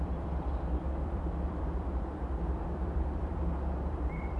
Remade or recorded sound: remade